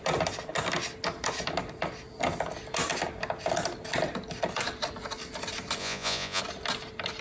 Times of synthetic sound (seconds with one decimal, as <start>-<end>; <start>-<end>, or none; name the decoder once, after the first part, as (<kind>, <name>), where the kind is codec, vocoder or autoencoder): 5.8-6.4 (vocoder, Vocos)